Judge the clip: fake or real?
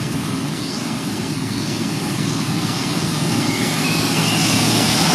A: fake